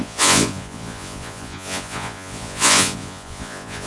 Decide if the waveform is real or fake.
fake